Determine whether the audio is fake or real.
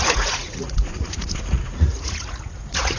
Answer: fake